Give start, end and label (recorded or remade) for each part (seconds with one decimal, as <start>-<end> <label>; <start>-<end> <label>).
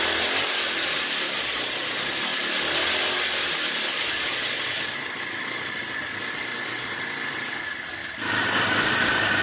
0.0-9.4 recorded